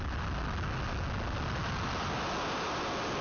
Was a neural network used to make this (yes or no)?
no